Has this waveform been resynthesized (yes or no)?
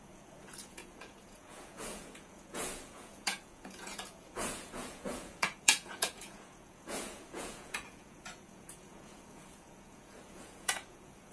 yes